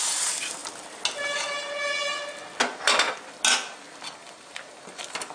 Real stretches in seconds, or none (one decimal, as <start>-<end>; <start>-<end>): 0.0-4.2; 4.8-5.3